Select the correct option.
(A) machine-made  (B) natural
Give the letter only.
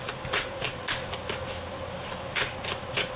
B